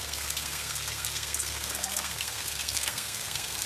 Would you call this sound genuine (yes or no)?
no